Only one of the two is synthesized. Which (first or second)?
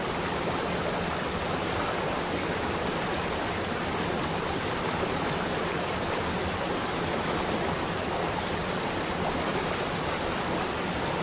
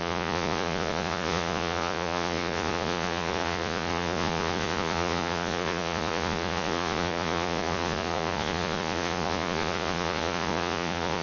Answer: second